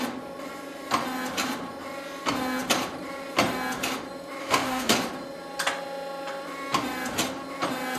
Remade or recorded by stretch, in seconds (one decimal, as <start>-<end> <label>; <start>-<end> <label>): 0.0-4.4 recorded; 4.4-4.9 remade; 4.9-8.0 recorded